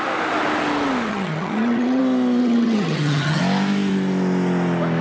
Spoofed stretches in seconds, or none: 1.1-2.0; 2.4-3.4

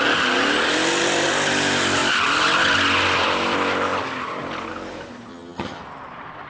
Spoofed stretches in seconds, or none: 5.3-5.8

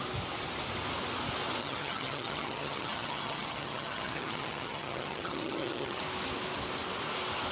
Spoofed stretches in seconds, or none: 1.6-6.0